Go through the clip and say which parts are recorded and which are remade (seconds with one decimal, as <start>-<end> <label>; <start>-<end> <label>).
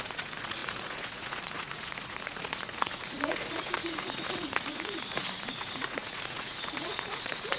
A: 0.0-7.6 remade